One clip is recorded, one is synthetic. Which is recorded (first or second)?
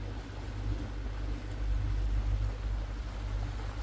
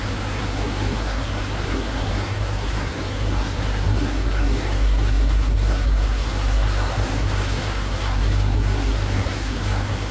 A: first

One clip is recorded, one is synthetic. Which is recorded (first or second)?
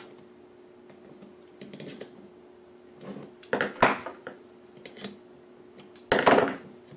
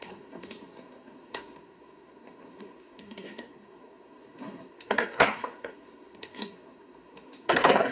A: first